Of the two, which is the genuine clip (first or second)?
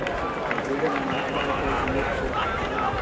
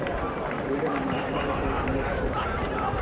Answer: first